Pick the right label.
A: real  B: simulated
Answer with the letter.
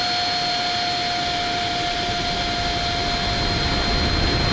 A